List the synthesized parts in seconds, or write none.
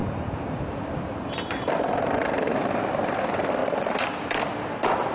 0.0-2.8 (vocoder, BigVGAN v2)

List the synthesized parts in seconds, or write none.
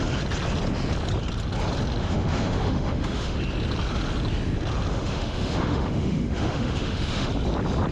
2.0-3.4 (autoencoder, DAC-VAE); 4.9-7.3